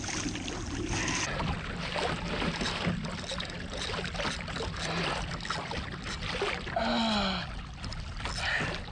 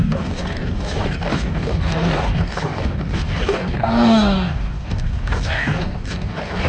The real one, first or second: first